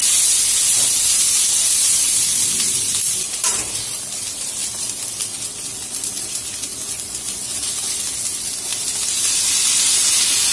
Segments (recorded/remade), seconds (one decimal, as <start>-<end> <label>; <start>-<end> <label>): 0.0-6.7 recorded; 6.7-7.9 remade; 7.9-10.5 recorded